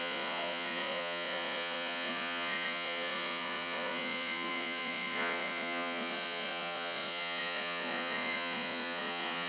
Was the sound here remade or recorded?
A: remade